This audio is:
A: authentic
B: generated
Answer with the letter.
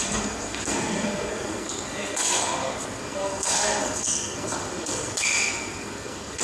B